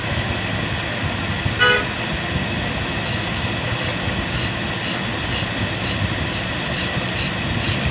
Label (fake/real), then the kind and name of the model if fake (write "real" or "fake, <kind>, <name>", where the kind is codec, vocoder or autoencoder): real